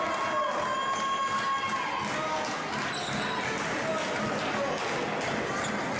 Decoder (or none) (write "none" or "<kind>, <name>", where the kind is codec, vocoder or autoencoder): none